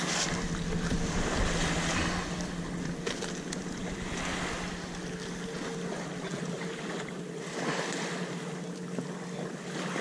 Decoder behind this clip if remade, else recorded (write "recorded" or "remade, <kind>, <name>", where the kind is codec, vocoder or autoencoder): recorded